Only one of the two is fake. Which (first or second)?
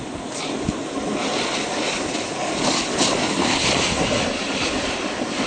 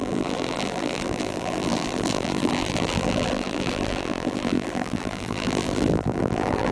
second